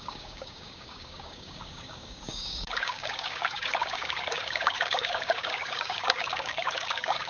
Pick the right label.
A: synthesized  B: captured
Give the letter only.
A